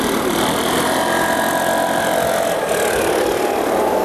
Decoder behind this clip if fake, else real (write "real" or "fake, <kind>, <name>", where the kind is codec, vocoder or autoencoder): real